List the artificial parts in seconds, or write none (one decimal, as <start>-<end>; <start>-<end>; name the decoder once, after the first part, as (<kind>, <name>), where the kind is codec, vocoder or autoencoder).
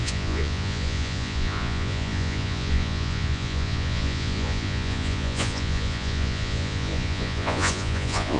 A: 0.0-8.4 (vocoder, Vocos)